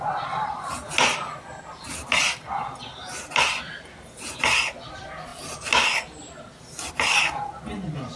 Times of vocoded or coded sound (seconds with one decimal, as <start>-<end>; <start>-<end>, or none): none